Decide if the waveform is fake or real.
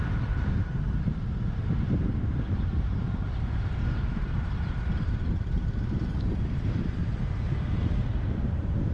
fake